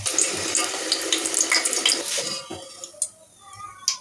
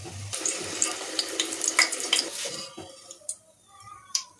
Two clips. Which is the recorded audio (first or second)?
first